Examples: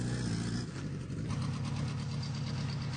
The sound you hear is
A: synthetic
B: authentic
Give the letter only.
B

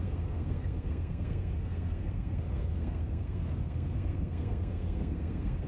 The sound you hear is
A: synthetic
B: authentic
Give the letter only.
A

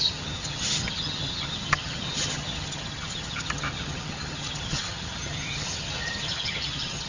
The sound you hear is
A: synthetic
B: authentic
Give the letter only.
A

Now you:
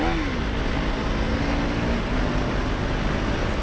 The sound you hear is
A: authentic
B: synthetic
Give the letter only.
A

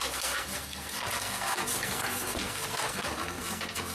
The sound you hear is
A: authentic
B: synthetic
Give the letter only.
B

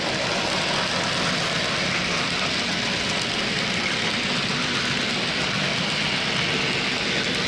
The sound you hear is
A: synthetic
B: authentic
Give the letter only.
B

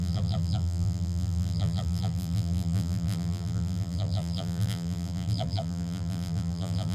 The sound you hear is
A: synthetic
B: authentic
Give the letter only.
A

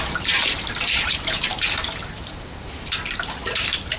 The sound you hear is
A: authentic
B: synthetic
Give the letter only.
B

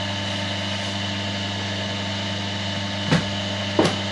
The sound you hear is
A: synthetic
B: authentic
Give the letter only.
B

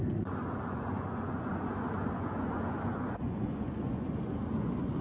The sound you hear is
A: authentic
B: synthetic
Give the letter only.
B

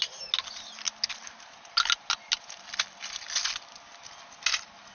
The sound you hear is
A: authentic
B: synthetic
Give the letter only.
A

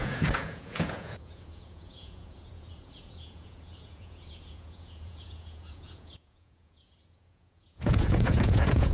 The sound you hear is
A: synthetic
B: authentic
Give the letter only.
A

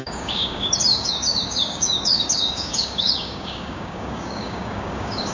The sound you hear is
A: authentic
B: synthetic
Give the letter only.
B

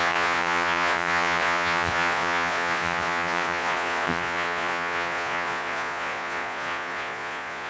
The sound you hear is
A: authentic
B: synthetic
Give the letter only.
B